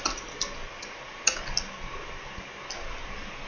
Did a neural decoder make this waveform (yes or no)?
no